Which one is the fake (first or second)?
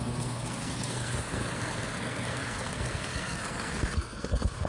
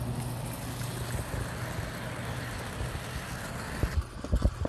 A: first